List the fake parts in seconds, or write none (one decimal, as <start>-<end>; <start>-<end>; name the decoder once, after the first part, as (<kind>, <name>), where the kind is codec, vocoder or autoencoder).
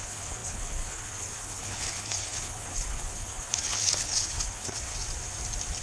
0.0-4.9 (codec, HILCodec)